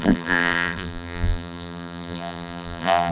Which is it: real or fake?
fake